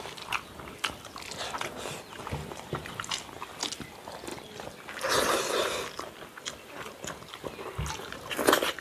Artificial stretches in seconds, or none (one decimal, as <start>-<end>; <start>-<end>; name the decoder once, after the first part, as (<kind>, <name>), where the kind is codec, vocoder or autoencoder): none